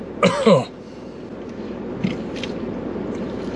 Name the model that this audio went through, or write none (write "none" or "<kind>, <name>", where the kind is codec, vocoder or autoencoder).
none